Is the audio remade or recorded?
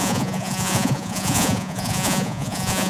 remade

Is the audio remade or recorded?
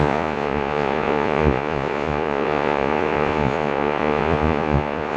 remade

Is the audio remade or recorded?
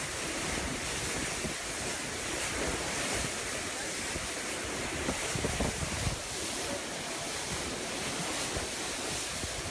recorded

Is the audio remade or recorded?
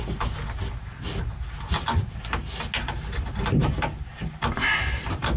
recorded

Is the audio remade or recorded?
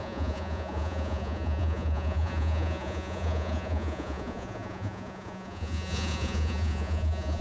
remade